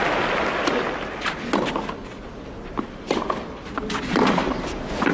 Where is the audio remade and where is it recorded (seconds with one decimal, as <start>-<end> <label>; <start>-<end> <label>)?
0.0-5.1 recorded